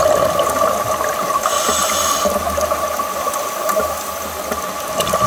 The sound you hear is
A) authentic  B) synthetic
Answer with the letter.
A